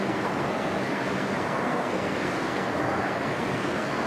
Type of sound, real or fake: fake